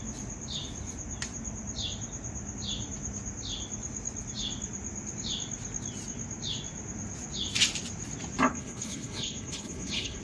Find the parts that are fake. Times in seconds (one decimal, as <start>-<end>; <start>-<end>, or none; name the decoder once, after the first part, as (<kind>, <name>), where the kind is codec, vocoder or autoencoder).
8.5-10.2 (codec, HILCodec)